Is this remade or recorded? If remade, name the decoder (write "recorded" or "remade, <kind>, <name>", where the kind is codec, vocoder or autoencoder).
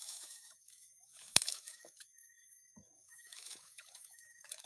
remade, autoencoder, DAC-VAE